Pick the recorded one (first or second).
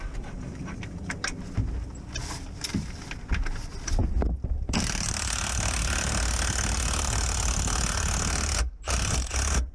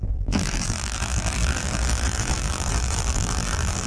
first